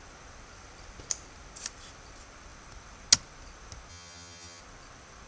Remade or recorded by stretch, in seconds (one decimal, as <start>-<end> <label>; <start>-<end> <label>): 0.0-3.9 recorded; 3.9-4.6 remade; 4.6-5.3 recorded